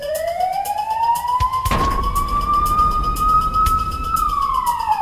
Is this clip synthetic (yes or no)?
yes